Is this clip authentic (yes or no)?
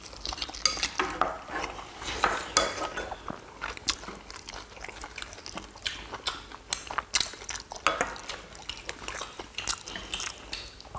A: yes